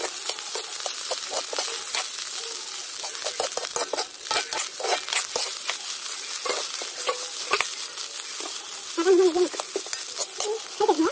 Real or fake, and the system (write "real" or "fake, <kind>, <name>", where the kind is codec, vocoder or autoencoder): real